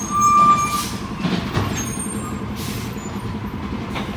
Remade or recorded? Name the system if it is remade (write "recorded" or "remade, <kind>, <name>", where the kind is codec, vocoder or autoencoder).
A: remade, vocoder, BigVGAN v2